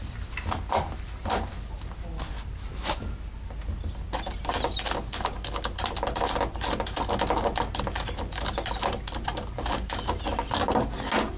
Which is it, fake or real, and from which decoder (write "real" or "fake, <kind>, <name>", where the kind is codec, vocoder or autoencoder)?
real